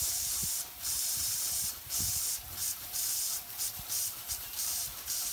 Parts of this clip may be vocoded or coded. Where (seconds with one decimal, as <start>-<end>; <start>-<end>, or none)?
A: 0.0-5.3